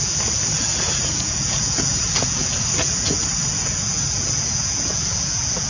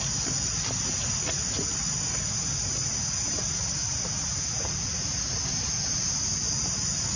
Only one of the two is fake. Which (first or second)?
first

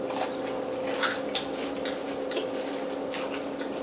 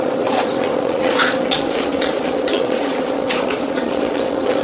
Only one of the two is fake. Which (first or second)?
second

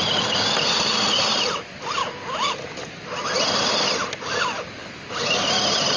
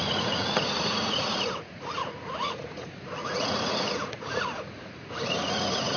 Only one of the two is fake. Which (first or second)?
second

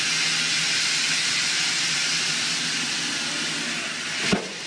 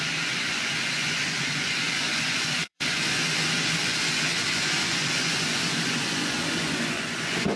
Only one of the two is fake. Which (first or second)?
second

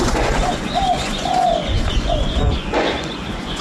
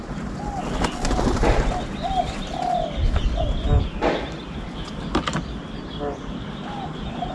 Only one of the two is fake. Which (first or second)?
first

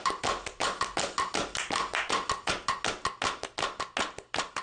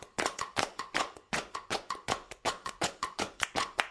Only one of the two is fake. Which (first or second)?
second